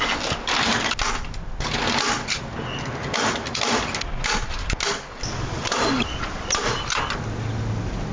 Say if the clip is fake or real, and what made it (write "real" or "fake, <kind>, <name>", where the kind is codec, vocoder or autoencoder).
real